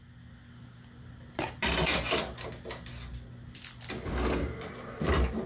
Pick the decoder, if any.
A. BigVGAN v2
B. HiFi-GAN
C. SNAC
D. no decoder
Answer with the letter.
D